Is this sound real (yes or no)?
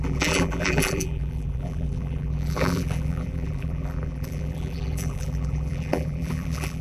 no